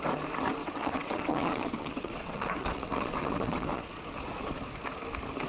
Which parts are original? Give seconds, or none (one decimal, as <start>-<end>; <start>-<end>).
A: 0.0-0.6; 3.9-5.5